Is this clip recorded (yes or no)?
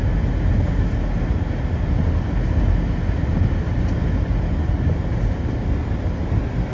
yes